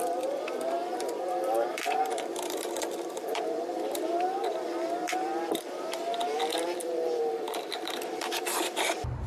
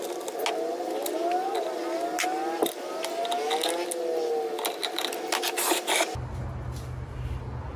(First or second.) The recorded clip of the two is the second